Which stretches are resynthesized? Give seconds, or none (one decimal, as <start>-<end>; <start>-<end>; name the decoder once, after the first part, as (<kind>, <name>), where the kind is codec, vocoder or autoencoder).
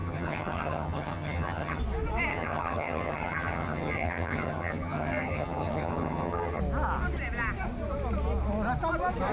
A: 0.0-1.8 (vocoder, HiFi-GAN); 2.3-6.6